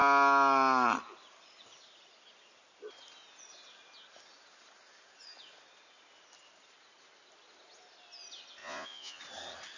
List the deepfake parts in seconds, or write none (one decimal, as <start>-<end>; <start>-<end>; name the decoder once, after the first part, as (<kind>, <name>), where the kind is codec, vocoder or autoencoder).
8.6-9.2 (vocoder, Vocos)